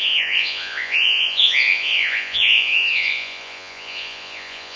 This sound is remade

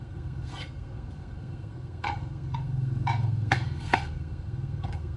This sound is remade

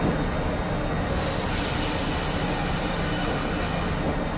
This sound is recorded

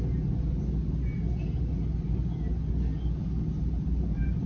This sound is recorded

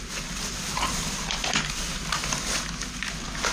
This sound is recorded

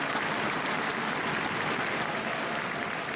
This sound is recorded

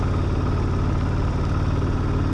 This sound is recorded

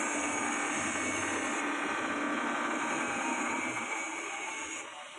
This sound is recorded